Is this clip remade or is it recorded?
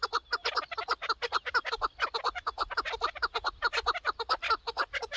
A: recorded